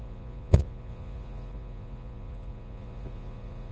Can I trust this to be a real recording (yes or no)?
no